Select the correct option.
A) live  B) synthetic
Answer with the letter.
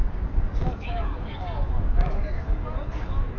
B